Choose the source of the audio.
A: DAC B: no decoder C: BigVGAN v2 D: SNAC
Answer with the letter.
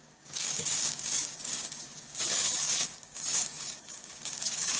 A